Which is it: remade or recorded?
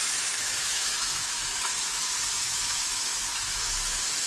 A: remade